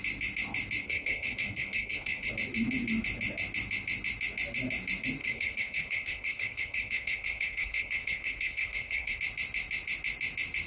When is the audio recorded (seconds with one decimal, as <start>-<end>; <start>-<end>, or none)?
0.0-0.8; 2.3-5.2; 9.2-10.7